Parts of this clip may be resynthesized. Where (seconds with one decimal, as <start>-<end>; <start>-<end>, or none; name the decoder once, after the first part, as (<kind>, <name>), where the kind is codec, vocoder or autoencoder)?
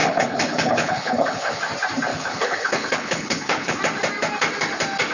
0.0-1.6 (codec, HILCodec); 2.1-3.8